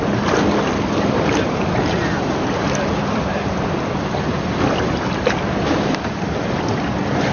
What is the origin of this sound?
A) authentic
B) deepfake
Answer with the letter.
A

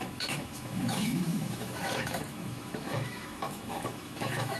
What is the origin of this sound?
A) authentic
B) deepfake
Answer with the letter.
B